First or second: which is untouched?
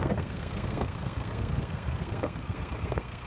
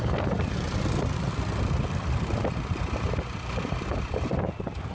second